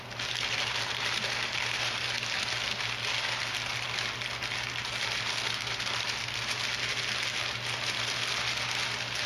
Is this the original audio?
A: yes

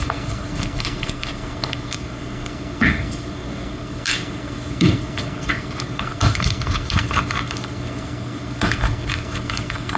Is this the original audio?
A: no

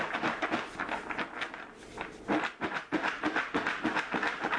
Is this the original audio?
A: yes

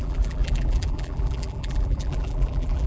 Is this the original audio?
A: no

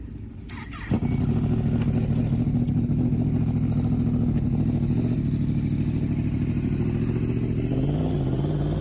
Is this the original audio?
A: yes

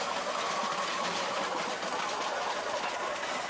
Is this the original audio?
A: yes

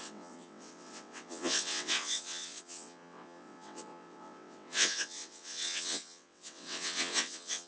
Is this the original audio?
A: no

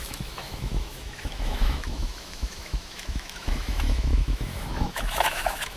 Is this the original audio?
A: no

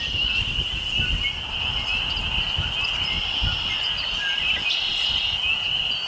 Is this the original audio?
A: yes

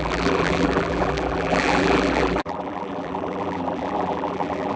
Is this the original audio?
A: no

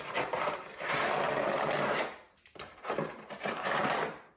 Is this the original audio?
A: no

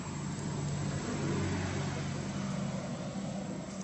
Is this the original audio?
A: yes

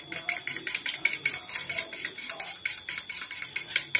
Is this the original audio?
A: yes